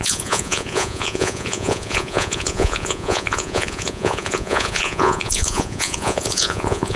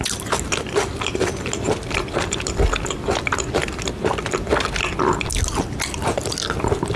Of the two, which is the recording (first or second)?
second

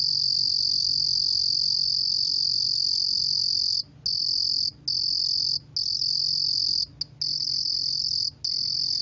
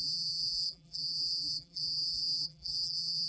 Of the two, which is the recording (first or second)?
first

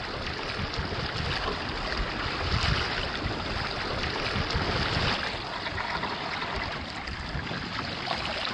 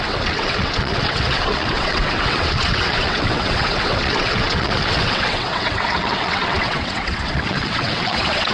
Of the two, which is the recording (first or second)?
first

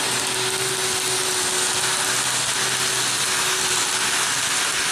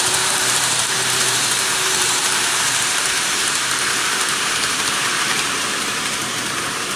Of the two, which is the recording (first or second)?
first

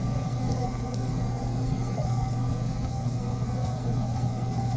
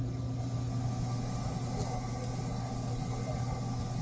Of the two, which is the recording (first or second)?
second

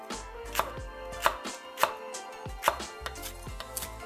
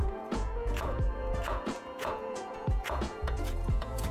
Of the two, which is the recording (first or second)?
first